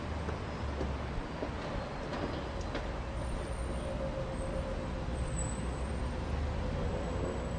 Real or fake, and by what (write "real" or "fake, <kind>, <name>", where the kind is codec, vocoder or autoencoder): real